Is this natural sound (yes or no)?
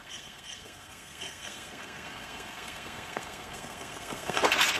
no